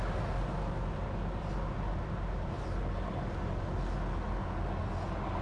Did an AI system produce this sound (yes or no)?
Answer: no